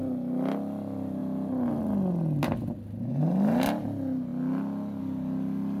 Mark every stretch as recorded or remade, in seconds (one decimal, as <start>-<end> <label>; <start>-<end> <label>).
0.0-5.8 recorded